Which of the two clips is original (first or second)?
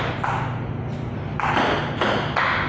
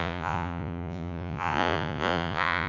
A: first